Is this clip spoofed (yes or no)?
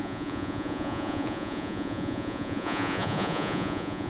yes